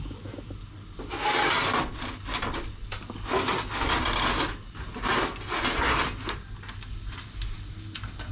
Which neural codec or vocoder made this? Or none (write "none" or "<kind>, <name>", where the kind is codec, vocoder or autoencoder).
none